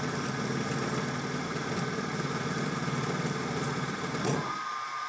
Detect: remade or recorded remade